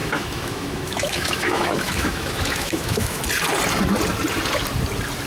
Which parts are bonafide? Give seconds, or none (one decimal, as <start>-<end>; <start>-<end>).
3.2-5.3